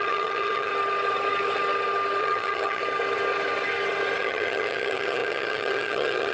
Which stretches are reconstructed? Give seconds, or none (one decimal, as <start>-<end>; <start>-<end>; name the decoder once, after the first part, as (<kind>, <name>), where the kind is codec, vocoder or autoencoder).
0.0-0.7 (vocoder, HiFi-GAN); 2.2-2.8; 4.2-6.3